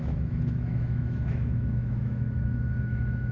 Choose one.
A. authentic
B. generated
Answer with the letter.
B